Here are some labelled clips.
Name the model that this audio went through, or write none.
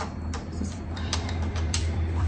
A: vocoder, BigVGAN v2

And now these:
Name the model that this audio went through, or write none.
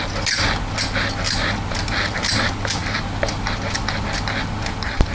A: none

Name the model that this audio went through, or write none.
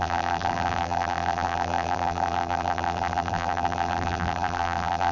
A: vocoder, BigVGAN v2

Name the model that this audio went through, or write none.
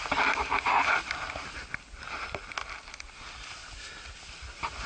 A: none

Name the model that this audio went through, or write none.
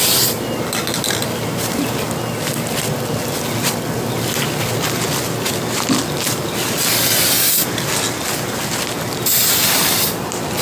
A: none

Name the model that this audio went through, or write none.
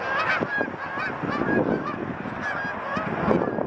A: none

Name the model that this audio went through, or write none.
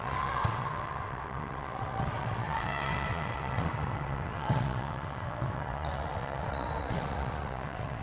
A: vocoder, WaveNeXt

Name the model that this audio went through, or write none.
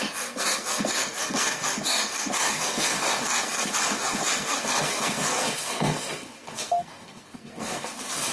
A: codec, SNAC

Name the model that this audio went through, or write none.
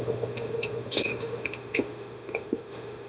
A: autoencoder, DAC-VAE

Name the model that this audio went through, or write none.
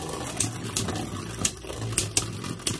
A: none